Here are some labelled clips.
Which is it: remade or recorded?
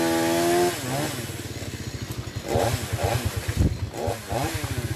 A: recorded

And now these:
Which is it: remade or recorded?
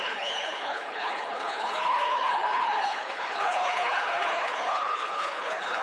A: remade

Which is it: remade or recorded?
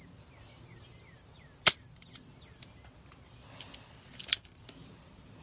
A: recorded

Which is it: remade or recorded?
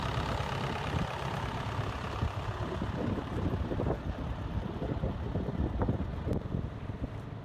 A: recorded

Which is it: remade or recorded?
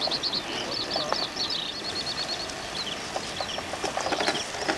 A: recorded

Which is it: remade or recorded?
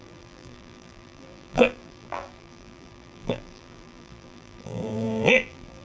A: remade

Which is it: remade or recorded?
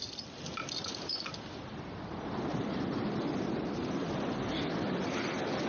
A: remade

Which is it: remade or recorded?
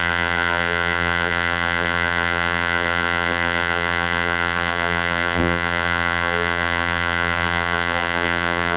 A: remade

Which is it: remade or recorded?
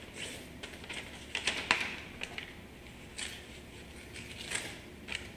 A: recorded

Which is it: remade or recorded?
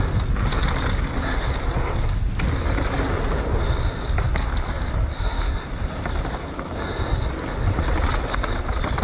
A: recorded